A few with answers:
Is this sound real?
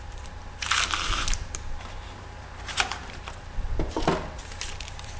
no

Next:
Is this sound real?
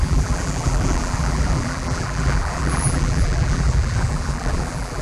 no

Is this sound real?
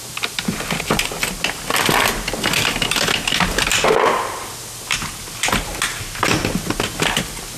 yes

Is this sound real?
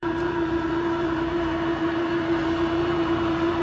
no